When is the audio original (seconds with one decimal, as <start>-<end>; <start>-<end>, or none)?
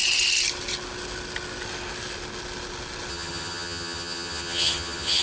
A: 0.0-3.1